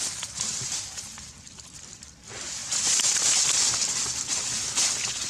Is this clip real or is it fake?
real